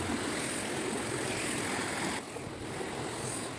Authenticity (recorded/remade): recorded